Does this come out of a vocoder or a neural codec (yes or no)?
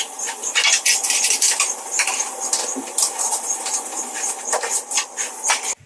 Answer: no